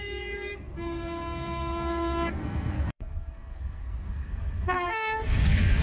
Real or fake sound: fake